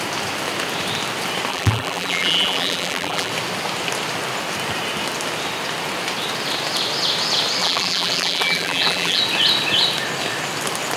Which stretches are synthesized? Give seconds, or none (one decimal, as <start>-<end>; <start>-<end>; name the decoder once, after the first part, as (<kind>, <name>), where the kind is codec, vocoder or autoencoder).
1.5-3.3 (vocoder, BigVGAN v2); 7.6-9.2